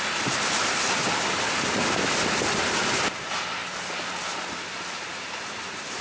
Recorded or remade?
recorded